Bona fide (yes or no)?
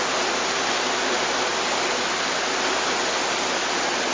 yes